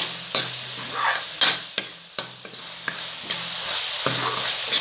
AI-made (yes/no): no